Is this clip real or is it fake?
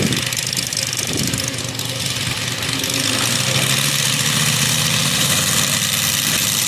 fake